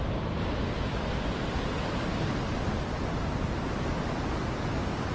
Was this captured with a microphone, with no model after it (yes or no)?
yes